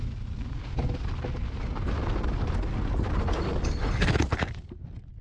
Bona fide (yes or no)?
yes